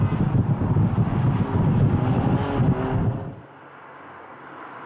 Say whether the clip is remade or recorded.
recorded